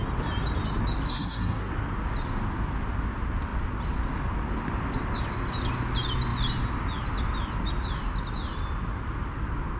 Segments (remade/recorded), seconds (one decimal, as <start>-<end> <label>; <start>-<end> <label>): 0.0-1.1 recorded; 1.1-1.7 remade; 1.7-9.8 recorded